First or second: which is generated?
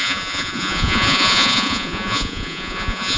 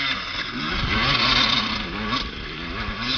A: first